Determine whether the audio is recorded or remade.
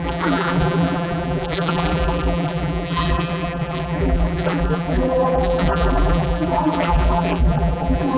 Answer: remade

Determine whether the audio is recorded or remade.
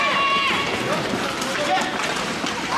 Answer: remade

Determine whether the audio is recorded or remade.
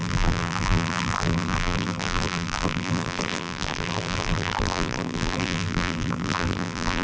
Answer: remade